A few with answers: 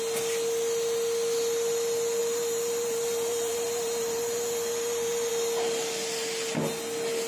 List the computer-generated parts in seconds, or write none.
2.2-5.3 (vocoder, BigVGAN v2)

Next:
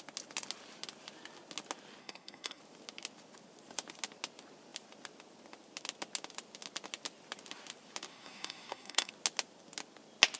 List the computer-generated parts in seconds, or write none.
2.0-2.6 (codec, SNAC); 8.1-9.1

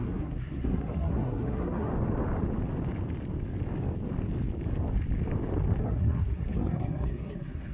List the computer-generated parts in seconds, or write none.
0.0-1.9 (codec, SNAC); 5.8-7.7